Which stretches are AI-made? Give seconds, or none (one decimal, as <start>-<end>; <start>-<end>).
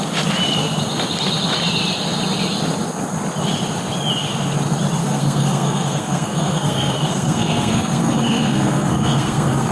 5.0-9.7